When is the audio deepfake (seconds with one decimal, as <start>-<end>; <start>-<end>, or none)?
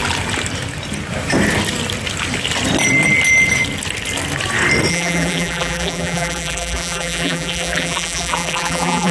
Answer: 4.9-9.1